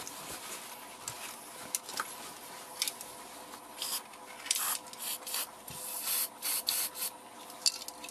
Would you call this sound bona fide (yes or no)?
yes